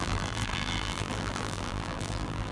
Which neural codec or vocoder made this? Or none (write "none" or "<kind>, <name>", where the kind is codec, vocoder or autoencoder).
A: vocoder, BigVGAN v2